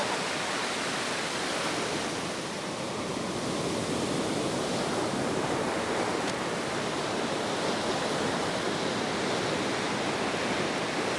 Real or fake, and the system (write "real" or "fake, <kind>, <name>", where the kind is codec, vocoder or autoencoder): real